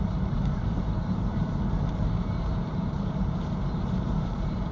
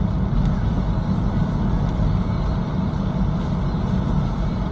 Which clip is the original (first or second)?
second